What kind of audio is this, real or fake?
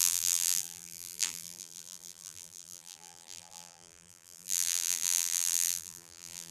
fake